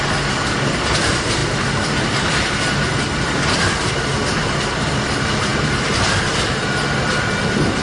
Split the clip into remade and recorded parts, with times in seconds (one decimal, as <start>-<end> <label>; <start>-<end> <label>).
0.0-1.4 recorded; 1.4-3.9 remade; 3.9-5.5 recorded; 5.5-7.1 remade; 7.1-7.8 recorded